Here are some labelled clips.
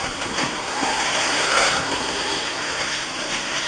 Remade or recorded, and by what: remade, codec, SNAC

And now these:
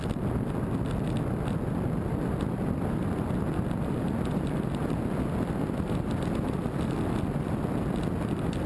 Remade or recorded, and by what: recorded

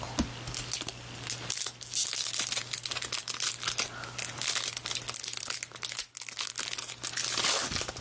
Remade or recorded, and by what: recorded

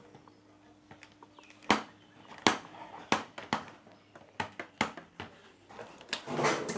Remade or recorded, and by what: recorded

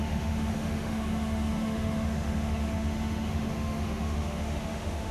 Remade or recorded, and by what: remade, autoencoder, DAC-VAE